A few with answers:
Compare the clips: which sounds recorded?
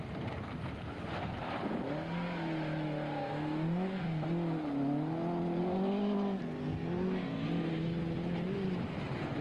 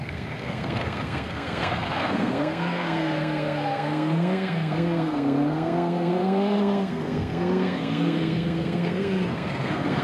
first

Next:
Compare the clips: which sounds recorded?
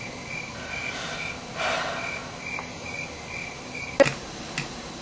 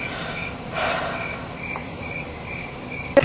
first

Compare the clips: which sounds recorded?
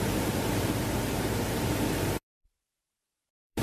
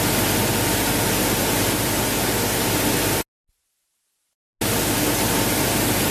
second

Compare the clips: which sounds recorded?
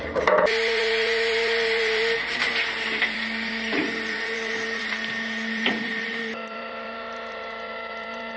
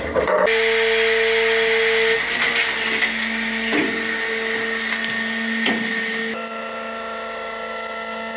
second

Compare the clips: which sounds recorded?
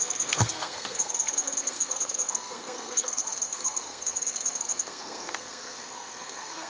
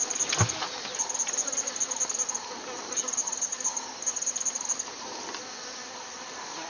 second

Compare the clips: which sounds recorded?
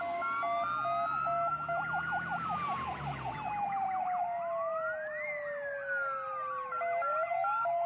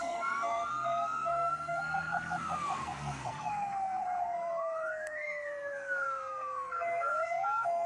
first